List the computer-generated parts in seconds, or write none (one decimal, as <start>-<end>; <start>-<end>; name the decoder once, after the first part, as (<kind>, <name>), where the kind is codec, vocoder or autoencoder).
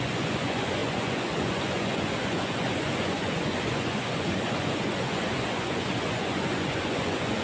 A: 0.0-7.4 (vocoder, Vocos)